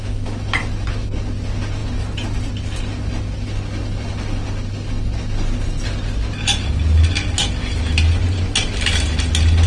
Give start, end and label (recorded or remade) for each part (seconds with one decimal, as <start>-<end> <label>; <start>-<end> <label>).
0.0-9.7 recorded

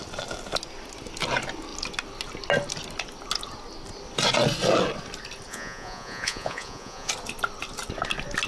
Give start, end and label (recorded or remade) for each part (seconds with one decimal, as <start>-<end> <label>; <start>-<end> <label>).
0.0-5.5 recorded; 5.5-7.1 remade; 7.1-8.5 recorded

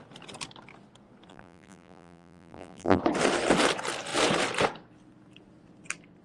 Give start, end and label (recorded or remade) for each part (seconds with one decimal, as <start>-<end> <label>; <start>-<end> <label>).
0.0-1.3 recorded; 1.3-3.0 remade; 3.0-6.2 recorded

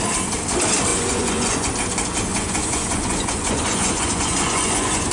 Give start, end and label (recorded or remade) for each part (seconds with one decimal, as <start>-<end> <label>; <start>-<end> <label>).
0.0-0.9 recorded; 0.9-1.7 remade; 1.7-2.3 recorded; 2.3-5.1 remade

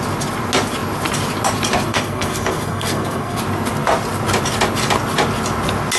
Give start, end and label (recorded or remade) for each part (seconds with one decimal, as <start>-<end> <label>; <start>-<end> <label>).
0.0-1.9 recorded; 1.9-3.4 remade; 3.4-6.0 recorded

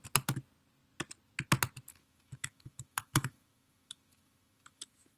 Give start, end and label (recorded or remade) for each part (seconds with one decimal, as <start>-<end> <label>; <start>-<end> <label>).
0.0-1.9 recorded; 1.9-5.2 remade

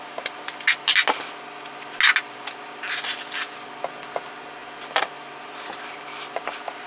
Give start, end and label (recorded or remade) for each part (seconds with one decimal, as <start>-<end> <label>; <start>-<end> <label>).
0.0-6.9 recorded